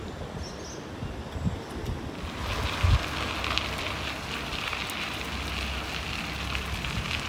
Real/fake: real